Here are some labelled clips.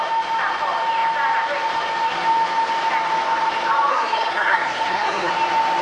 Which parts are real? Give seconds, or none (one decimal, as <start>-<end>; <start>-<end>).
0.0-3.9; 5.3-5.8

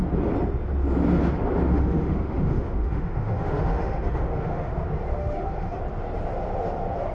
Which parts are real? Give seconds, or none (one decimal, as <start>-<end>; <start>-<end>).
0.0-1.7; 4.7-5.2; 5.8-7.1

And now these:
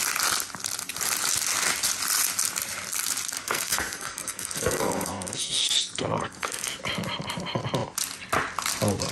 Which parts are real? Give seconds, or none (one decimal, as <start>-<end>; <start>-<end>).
0.0-3.4; 6.8-9.1

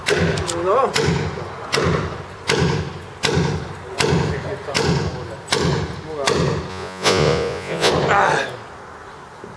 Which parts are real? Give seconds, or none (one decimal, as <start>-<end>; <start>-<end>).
0.0-6.7; 7.9-9.6